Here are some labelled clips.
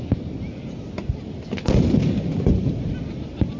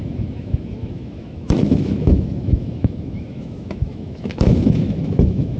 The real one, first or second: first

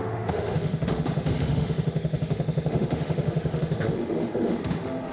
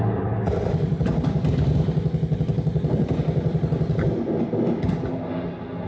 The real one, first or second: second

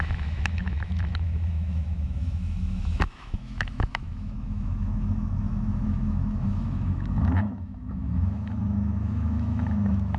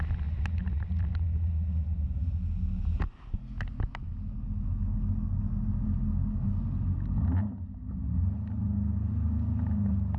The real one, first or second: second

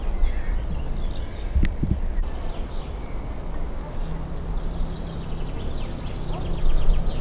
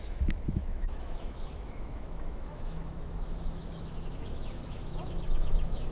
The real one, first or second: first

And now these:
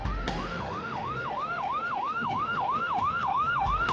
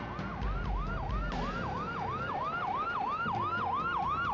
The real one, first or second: second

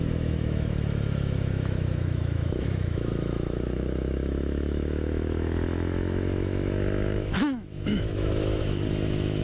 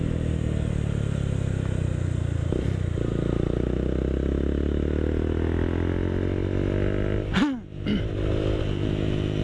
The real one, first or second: second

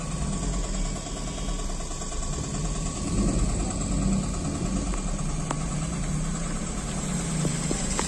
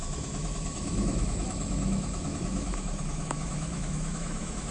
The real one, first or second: first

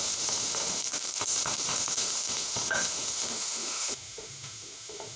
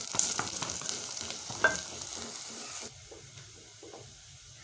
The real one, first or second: second